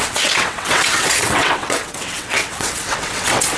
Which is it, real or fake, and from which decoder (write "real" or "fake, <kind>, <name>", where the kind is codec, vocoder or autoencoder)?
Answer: fake, vocoder, WaveNeXt